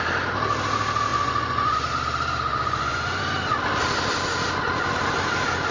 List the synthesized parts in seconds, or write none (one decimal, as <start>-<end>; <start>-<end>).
1.1-1.9; 2.5-3.2